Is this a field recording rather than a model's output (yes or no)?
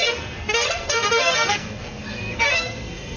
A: no